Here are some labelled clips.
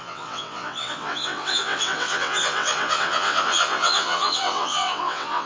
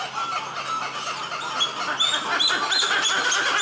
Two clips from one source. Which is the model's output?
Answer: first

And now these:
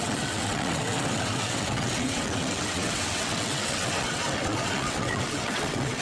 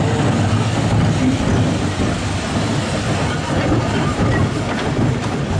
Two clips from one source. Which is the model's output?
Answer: first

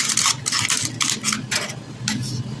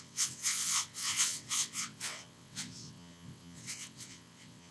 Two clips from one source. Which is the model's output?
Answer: second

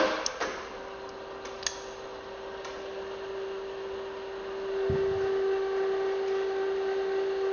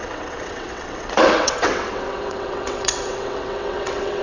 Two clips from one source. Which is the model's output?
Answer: second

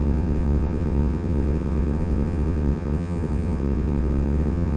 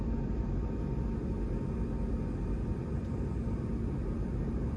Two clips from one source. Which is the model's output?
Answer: first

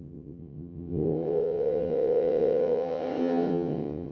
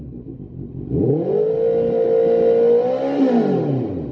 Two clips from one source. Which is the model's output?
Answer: first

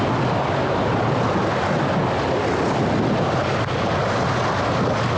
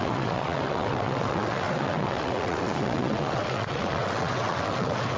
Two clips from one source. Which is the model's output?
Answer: second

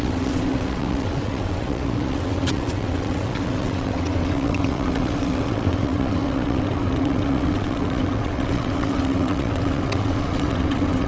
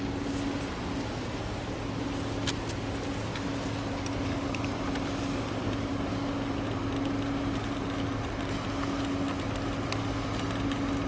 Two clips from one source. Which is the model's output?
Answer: first